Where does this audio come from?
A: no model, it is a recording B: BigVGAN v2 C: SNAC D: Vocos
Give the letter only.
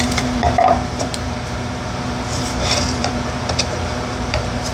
B